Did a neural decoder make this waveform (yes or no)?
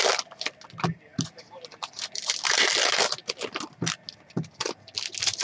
no